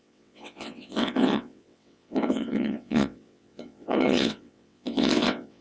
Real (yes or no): no